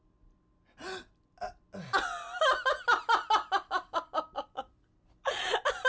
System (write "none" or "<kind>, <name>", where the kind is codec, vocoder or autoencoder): none